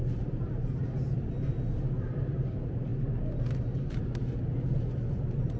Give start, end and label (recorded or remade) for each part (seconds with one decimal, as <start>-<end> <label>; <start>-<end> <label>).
0.0-5.6 recorded

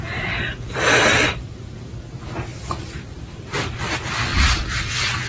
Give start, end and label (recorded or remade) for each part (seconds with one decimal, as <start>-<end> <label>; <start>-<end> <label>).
0.0-1.1 recorded; 1.1-1.8 remade; 1.8-2.5 recorded; 2.5-3.8 remade; 3.8-5.3 recorded

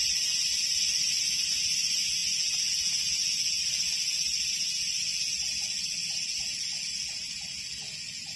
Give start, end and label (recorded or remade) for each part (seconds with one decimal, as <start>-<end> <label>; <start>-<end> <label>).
0.0-8.4 recorded

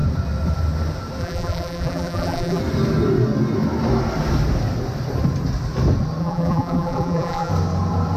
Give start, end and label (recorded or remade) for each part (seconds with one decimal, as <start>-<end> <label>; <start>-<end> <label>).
0.0-1.2 recorded; 1.2-2.6 remade; 2.6-6.2 recorded; 6.2-7.5 remade; 7.5-8.2 recorded